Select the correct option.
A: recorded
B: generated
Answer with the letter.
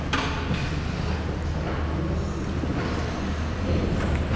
A